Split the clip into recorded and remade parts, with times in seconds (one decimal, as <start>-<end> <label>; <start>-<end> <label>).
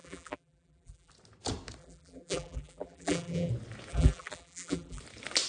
0.0-1.1 remade; 1.1-1.8 recorded; 1.8-3.5 remade; 3.5-3.9 recorded; 3.9-5.0 remade; 5.0-5.5 recorded